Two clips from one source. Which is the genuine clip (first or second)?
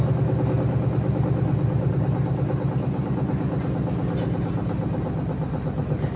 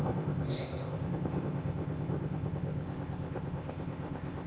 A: first